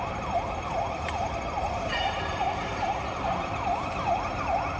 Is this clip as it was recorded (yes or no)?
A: no